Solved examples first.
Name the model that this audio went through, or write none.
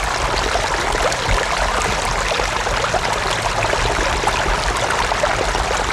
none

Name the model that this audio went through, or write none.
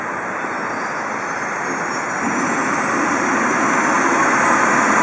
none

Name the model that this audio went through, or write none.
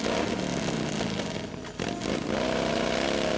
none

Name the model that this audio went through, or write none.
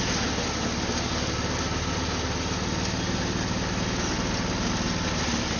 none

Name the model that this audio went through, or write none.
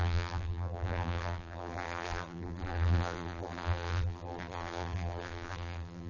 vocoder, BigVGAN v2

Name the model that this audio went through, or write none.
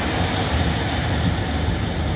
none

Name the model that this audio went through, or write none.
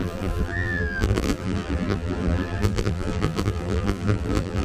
vocoder, BigVGAN v2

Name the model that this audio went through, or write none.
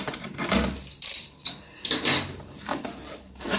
vocoder, BigVGAN v2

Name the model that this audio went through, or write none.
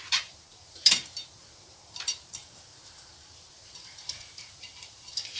vocoder, BigVGAN v2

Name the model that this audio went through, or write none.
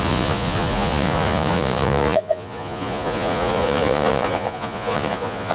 vocoder, Vocos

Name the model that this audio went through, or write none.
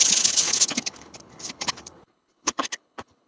codec, HILCodec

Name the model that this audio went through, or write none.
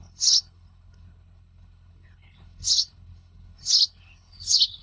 codec, HILCodec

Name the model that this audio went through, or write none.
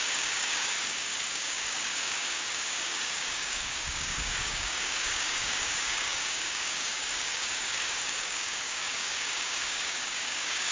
codec, DAC